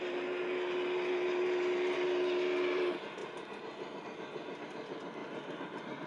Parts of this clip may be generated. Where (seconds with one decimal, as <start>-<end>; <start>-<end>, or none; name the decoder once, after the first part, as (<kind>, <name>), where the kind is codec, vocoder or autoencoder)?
none